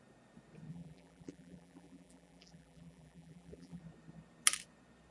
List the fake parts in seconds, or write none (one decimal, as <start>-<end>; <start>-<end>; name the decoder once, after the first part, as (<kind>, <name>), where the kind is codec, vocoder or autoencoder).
0.7-3.8 (vocoder, BigVGAN v2)